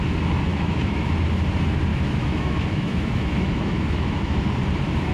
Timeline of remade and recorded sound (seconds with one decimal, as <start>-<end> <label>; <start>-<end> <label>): 0.0-0.5 recorded; 0.5-1.1 remade; 1.1-1.9 recorded; 1.9-4.4 remade; 4.4-5.1 recorded